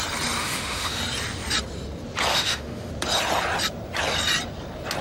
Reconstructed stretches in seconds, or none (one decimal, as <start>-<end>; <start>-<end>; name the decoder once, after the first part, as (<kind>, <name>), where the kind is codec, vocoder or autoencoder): 0.4-1.0 (autoencoder, DAC-VAE); 2.3-2.9